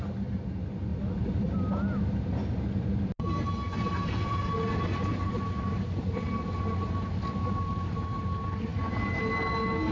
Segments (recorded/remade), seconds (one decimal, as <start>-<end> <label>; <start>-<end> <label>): 0.0-4.0 recorded; 4.0-4.5 remade; 4.5-9.9 recorded

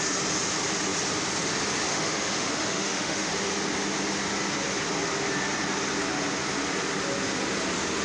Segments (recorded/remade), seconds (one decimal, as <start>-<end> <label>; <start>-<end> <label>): 0.0-1.9 recorded; 1.9-3.3 remade; 3.3-8.0 recorded

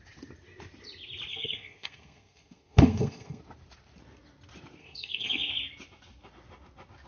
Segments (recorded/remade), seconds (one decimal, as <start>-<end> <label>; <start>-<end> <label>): 0.0-1.3 recorded; 1.3-3.4 remade; 3.4-4.8 recorded; 4.8-5.5 remade; 5.5-7.1 recorded

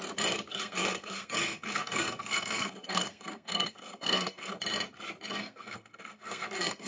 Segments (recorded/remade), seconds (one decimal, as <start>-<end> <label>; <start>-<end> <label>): 0.0-0.5 recorded; 0.5-4.5 remade; 4.5-5.4 recorded; 5.4-6.9 remade

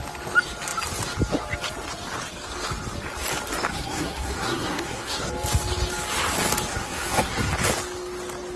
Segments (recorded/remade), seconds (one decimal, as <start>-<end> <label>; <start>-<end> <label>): 0.0-3.7 recorded; 3.7-5.3 remade; 5.3-6.7 recorded; 6.7-7.5 remade; 7.5-8.6 recorded

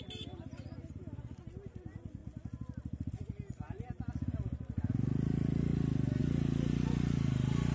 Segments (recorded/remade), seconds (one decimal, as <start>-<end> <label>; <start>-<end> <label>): 0.0-7.7 recorded

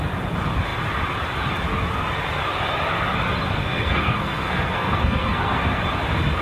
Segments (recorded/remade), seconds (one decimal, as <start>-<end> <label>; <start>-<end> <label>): 0.0-3.6 recorded; 3.6-5.8 remade; 5.8-6.4 recorded

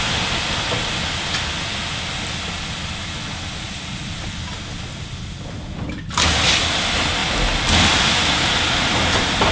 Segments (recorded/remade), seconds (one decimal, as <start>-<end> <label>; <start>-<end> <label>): 0.0-9.5 recorded